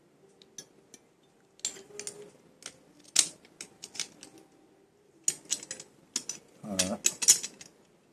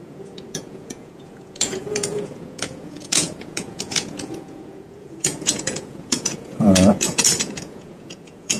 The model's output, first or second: second